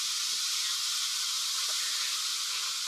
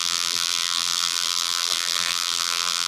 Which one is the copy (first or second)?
second